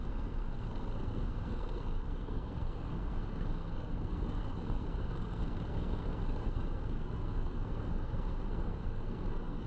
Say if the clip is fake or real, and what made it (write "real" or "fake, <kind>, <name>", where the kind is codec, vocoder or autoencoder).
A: fake, codec, SNAC